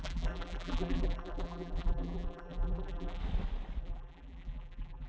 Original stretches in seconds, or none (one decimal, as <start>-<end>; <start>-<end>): 3.2-3.8